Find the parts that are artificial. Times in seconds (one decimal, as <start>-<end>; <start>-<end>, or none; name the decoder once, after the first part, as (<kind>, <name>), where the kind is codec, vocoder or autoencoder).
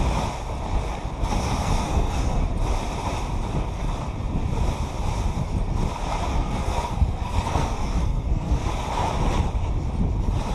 1.6-2.4 (codec, SNAC); 6.3-8.7